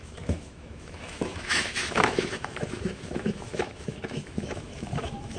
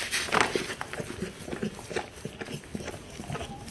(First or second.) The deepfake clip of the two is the first